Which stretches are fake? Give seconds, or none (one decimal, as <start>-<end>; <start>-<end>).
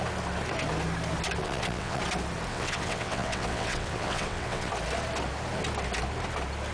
1.4-2.0; 2.5-4.7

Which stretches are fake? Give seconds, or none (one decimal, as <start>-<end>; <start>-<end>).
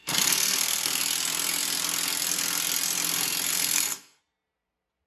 0.0-1.0; 3.5-4.2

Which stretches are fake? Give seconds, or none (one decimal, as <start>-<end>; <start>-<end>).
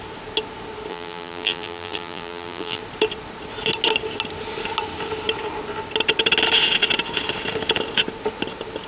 0.9-2.8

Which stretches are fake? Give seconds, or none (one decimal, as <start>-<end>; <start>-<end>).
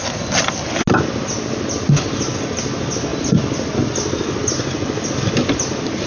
none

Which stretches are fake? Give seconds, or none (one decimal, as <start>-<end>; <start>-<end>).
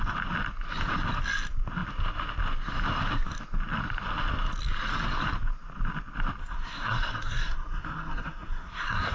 6.4-9.1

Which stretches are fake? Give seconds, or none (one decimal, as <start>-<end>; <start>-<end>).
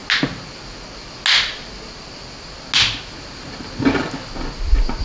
none